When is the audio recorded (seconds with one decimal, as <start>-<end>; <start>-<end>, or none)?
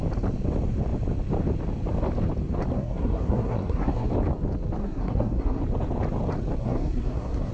0.0-2.7; 4.1-4.8; 5.6-6.6